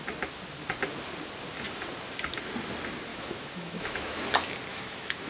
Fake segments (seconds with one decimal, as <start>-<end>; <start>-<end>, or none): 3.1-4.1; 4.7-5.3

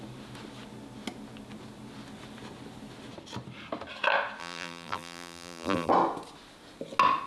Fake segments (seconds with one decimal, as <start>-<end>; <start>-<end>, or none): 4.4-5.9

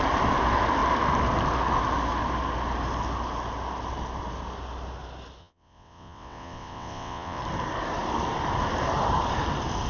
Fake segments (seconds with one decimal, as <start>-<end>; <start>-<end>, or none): 5.4-7.4